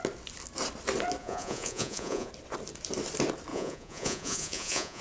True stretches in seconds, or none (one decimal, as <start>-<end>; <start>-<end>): 0.0-1.2; 2.3-3.5

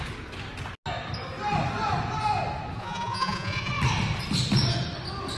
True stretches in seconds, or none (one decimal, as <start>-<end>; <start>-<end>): 0.0-2.8; 3.7-5.4